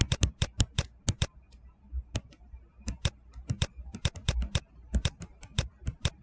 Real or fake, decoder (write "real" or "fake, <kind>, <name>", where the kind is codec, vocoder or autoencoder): real